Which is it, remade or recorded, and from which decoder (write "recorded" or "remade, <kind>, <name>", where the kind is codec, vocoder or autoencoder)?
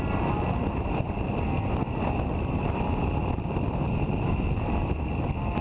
recorded